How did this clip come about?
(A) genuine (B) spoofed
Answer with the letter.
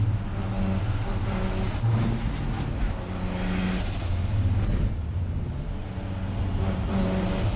A